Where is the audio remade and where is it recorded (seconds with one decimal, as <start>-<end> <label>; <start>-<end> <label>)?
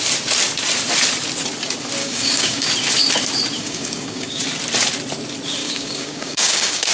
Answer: 0.0-2.0 recorded; 2.0-2.7 remade; 2.7-3.6 recorded; 3.6-4.4 remade; 4.4-5.6 recorded; 5.6-6.9 remade